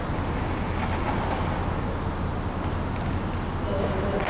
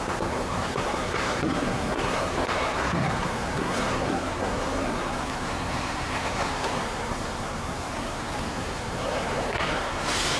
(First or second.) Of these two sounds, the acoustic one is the first